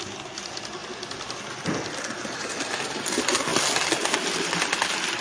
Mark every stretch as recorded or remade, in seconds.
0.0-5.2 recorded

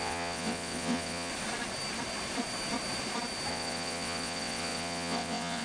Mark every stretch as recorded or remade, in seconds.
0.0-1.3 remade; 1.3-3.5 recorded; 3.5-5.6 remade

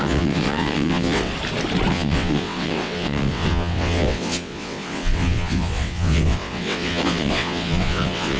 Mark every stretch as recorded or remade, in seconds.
0.0-1.3 remade; 1.3-1.9 recorded; 1.9-8.4 remade

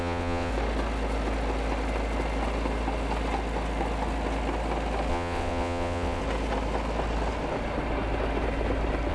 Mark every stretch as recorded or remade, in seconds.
0.0-0.5 remade; 0.5-5.1 recorded; 5.1-6.2 remade; 6.2-9.1 recorded